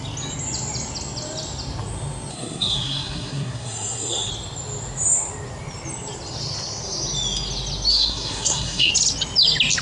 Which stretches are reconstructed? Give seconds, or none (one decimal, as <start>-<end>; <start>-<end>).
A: 2.3-4.3; 7.9-8.9